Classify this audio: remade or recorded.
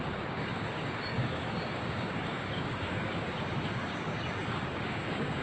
remade